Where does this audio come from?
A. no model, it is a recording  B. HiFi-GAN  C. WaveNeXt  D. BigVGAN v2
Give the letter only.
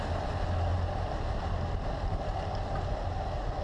A